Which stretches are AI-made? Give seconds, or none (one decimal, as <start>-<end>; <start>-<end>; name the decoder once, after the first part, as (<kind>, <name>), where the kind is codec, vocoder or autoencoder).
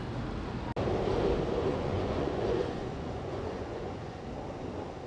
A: 1.7-4.2 (vocoder, Vocos)